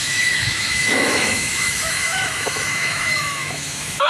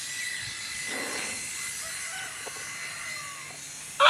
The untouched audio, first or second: second